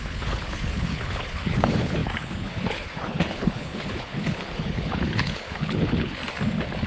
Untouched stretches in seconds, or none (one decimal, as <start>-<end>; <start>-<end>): 6.2-6.9